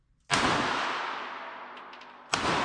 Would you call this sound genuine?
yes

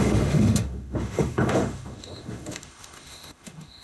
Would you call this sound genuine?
no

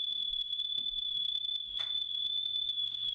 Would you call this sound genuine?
yes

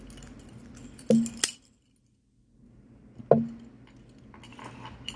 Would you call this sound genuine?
yes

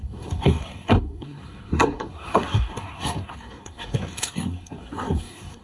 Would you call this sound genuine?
no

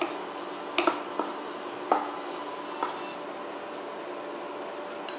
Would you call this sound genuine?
yes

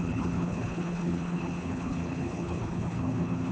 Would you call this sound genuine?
no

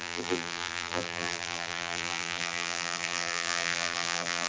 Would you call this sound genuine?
no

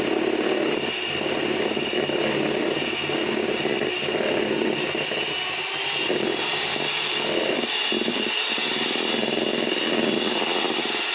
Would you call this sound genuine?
yes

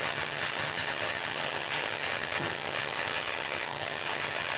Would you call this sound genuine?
no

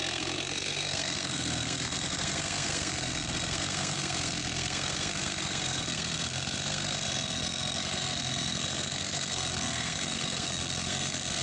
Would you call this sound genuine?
no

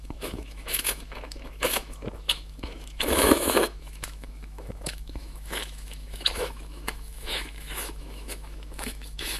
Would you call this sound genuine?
no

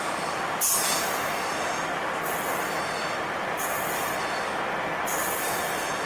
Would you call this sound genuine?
yes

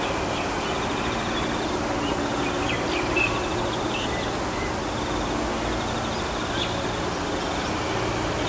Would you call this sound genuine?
yes